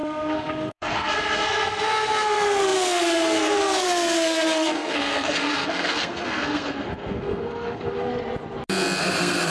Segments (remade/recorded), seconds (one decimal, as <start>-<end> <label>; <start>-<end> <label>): 0.0-8.1 remade; 8.1-9.0 recorded; 9.0-9.5 remade